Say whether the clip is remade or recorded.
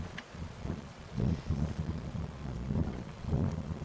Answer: remade